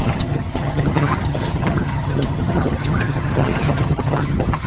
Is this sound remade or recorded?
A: remade